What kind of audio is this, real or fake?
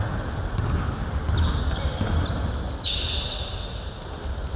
real